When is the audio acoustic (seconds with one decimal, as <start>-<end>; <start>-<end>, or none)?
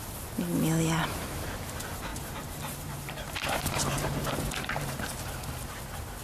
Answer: 0.0-2.1; 5.8-6.2